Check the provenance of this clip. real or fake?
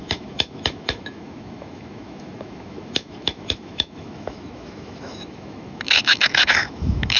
fake